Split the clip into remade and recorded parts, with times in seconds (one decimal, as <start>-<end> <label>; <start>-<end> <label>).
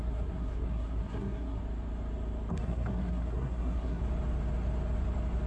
0.0-1.6 remade; 1.6-2.5 recorded; 2.5-4.0 remade; 4.0-5.5 recorded